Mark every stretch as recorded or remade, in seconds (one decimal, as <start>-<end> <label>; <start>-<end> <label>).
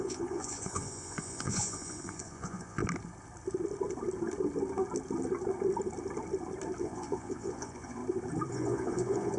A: 0.0-2.8 remade; 2.8-6.8 recorded; 6.8-8.0 remade; 8.0-8.5 recorded; 8.5-9.4 remade